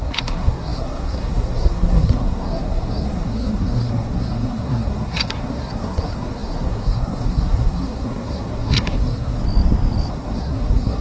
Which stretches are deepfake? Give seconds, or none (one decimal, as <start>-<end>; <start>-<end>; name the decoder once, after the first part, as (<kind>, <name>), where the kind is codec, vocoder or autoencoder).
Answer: 0.0-9.4 (codec, SNAC); 10.1-11.0